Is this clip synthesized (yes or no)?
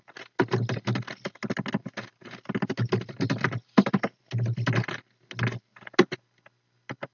no